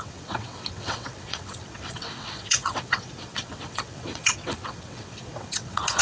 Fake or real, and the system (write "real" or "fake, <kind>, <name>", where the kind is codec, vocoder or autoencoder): fake, vocoder, WaveNeXt